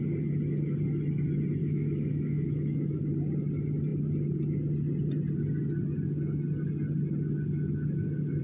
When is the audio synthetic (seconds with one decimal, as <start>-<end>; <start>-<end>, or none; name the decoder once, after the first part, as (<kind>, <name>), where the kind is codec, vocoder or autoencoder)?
1.6-3.0 (autoencoder, DAC-VAE)